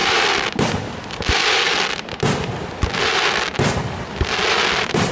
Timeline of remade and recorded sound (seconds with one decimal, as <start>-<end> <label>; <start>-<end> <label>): 0.0-1.4 remade; 1.4-4.5 recorded; 4.5-5.1 remade